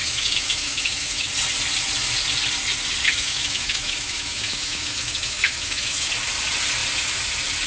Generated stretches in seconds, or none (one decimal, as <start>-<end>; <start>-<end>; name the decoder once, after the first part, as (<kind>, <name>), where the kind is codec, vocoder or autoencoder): 0.0-1.3 (autoencoder, DAC-VAE); 3.0-6.1